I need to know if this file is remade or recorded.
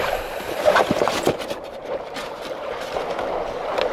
remade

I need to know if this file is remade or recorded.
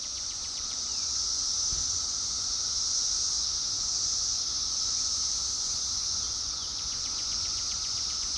remade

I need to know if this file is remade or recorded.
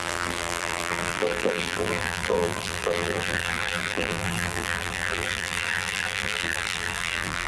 remade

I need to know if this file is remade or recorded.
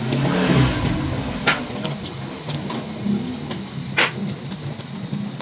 recorded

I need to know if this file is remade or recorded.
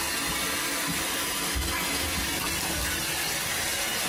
recorded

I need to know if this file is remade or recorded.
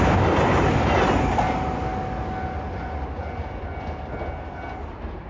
recorded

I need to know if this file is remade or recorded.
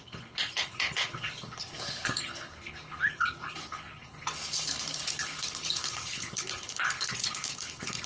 remade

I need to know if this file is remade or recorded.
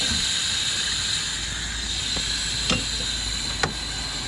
recorded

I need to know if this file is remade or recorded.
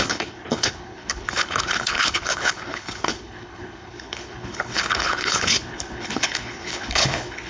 remade